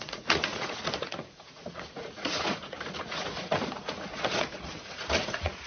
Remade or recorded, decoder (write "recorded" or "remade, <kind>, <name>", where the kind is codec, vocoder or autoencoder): remade, vocoder, Vocos